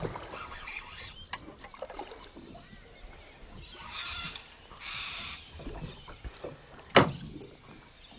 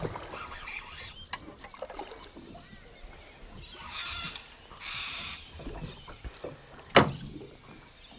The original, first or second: second